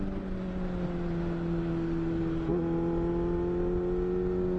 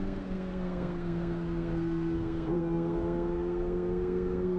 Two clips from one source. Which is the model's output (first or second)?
second